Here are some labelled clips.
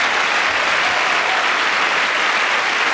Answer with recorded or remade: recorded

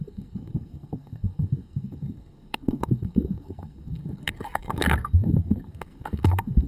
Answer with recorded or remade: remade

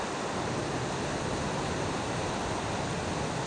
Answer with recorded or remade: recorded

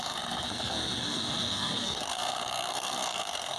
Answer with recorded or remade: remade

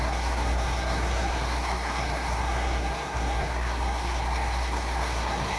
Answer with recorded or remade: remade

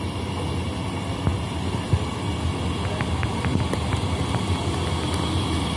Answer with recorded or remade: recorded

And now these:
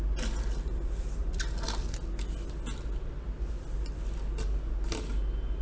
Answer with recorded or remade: recorded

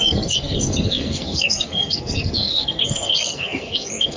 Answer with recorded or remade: remade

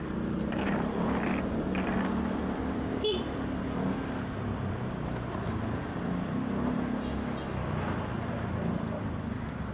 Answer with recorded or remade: recorded